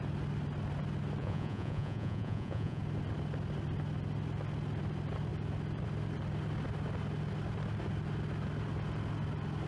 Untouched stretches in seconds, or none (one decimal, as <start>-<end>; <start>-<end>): 0.0-1.2; 2.8-9.7